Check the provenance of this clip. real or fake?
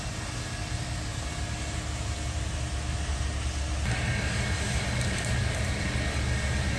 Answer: real